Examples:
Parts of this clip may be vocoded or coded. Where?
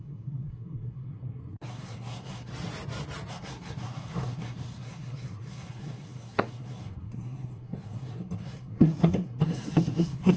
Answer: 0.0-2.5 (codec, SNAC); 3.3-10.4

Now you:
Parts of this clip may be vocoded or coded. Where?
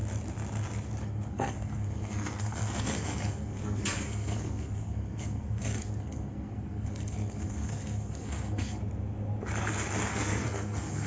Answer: 1.0-8.8 (codec, SNAC); 10.1-11.1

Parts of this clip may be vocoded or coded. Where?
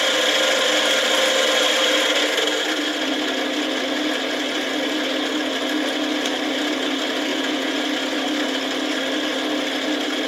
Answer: 7.3-7.8 (vocoder, Vocos)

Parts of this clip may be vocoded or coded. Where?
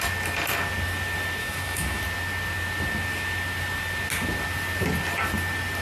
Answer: 1.4-2.0 (autoencoder, DAC-VAE)